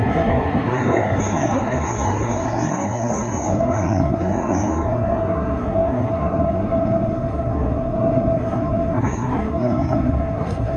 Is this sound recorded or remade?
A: remade